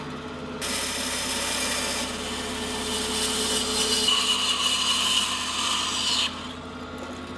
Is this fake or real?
real